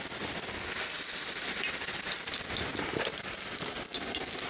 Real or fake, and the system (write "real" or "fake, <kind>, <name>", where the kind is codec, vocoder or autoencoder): real